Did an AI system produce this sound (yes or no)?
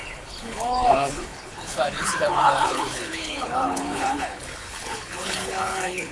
yes